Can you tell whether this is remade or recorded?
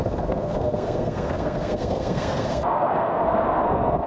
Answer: remade